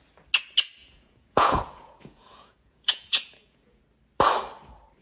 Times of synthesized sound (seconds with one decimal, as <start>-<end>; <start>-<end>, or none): 0.8-3.8